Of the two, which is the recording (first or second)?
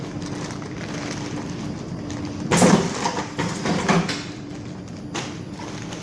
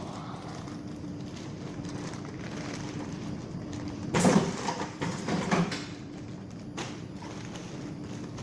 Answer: first